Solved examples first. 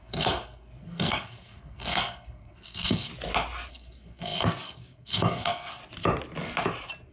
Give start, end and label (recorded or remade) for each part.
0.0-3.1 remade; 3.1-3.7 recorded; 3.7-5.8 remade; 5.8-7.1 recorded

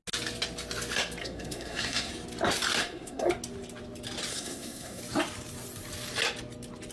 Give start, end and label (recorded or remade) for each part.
0.0-1.2 recorded; 1.2-2.1 remade; 2.1-2.8 recorded; 2.8-3.3 remade; 3.3-4.3 recorded; 4.3-5.0 remade; 5.0-6.9 recorded

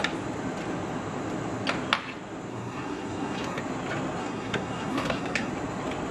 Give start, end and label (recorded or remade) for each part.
0.0-2.5 recorded; 2.5-3.6 remade; 3.6-4.2 recorded; 4.2-5.5 remade; 5.5-6.1 recorded

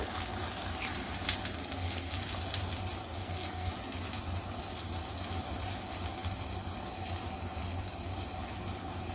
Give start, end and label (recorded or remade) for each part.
0.0-1.5 recorded; 1.5-2.2 remade; 2.2-3.2 recorded; 3.2-3.7 remade; 3.7-9.1 recorded